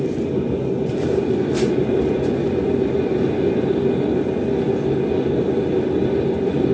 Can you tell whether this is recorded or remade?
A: recorded